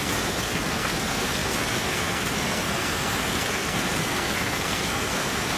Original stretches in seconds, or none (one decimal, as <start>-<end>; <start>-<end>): none